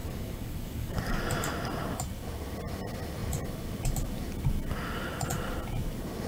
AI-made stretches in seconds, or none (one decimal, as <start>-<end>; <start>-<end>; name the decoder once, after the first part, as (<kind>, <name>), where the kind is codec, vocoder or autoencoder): 0.0-1.2 (codec, DAC)